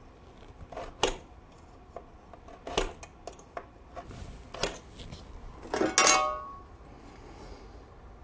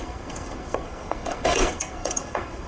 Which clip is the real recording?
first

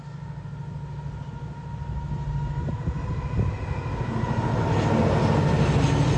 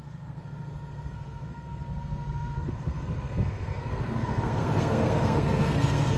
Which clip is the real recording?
first